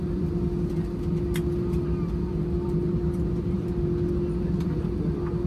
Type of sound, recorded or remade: recorded